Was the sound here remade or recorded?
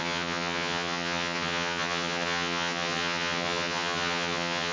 remade